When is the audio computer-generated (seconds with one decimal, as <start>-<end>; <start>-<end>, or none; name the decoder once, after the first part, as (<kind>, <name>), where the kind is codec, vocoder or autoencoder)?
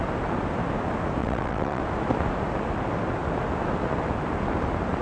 1.2-1.8 (vocoder, WaveNeXt)